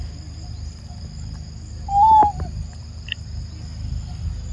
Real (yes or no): yes